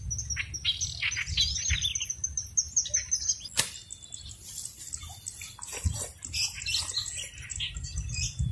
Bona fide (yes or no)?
yes